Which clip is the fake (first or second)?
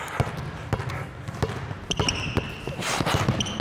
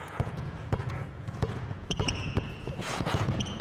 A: second